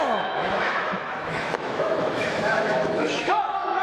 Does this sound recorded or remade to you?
remade